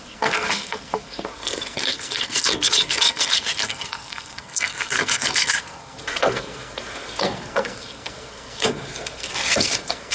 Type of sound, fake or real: fake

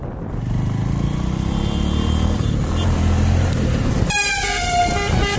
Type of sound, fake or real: real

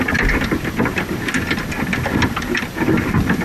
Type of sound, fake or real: real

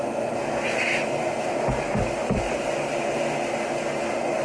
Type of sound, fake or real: real